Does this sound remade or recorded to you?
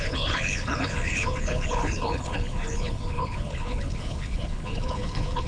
remade